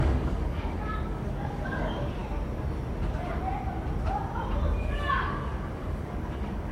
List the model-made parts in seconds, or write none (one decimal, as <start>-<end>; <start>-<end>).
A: 0.0-2.2; 4.8-6.7